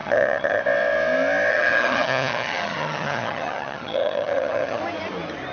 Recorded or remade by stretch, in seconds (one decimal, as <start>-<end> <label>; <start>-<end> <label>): 0.0-0.6 remade; 0.6-1.5 recorded; 1.5-4.8 remade; 4.8-5.5 recorded